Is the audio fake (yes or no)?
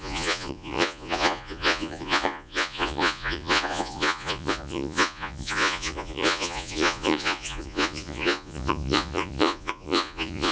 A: yes